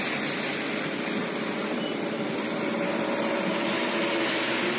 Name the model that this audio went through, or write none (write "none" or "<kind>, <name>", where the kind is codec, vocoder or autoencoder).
none